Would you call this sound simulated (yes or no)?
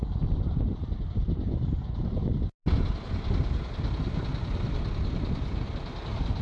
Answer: no